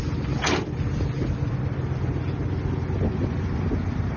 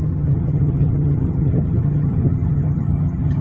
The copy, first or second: second